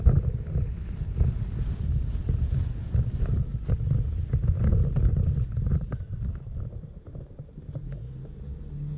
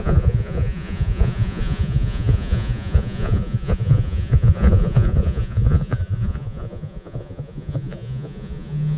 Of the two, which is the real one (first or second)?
first